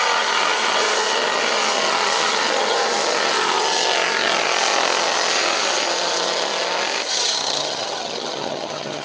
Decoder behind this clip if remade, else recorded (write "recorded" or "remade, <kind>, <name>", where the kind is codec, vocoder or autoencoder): remade, vocoder, HiFi-GAN